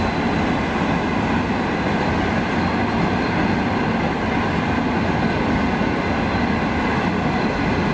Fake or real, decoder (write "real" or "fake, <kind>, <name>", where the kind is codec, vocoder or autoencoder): real